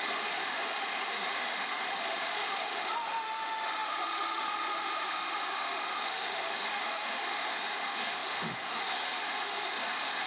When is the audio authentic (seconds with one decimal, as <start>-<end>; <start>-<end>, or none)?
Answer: none